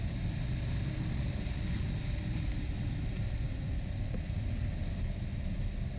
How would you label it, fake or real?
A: real